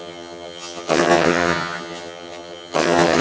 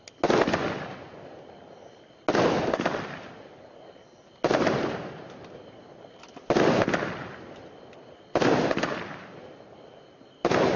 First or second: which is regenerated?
first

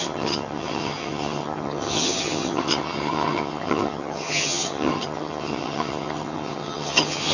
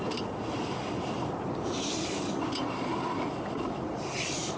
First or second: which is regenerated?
first